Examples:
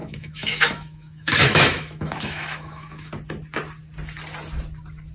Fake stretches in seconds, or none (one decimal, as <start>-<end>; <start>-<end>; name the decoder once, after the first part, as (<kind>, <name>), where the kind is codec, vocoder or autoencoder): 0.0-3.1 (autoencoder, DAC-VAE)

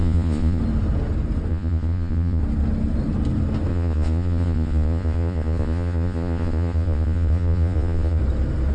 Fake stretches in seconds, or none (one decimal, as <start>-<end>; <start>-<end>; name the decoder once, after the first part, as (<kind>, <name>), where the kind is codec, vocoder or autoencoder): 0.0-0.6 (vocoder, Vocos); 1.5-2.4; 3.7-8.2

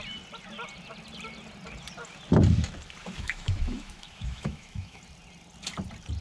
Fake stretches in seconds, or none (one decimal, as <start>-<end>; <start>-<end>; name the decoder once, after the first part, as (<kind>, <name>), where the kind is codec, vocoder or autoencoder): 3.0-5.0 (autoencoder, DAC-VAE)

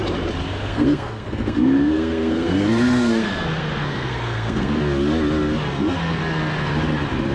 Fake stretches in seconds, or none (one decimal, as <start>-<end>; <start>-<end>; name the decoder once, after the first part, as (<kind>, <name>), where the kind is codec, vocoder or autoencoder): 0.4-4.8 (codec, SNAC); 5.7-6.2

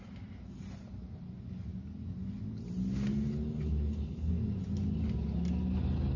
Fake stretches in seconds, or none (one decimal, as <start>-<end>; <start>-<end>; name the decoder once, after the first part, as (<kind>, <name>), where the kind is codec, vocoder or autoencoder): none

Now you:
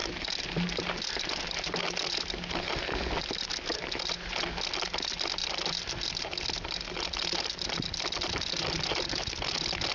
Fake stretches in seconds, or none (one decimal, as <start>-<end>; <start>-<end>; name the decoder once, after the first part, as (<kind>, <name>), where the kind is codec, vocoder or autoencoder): none

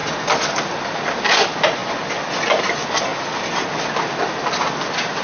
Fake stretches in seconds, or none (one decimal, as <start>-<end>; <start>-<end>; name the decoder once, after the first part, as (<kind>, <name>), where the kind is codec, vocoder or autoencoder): none